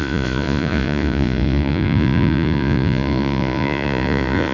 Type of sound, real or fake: fake